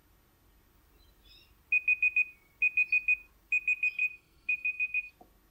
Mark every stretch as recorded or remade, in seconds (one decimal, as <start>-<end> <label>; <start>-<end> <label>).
0.0-4.0 recorded; 4.0-5.1 remade; 5.1-5.5 recorded